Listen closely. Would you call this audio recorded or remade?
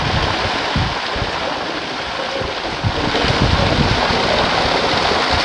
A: recorded